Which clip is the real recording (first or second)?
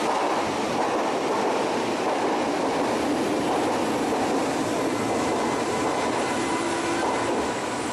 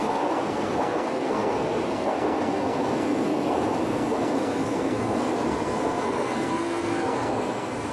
first